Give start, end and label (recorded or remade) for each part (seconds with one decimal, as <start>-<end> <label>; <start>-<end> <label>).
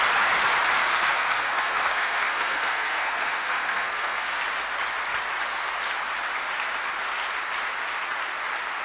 0.0-0.9 recorded; 0.9-4.4 remade; 4.4-8.8 recorded